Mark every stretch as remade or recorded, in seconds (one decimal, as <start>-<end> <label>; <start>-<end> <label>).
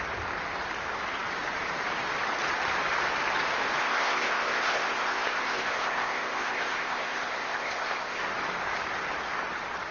0.0-3.8 recorded; 3.8-8.2 remade; 8.2-9.9 recorded